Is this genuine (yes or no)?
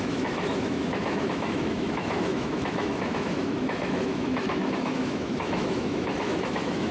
no